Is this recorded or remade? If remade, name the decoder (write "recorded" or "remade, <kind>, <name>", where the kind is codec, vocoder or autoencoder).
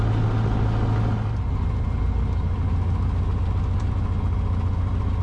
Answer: recorded